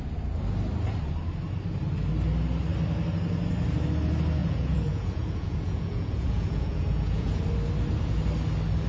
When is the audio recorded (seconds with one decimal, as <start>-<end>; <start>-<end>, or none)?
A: 0.0-4.4; 7.3-8.9

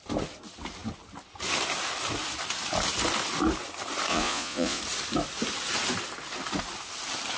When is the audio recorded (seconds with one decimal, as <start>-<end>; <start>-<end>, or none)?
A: 0.0-4.1; 4.8-7.4